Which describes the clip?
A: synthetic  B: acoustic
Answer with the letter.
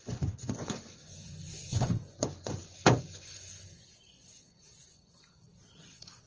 A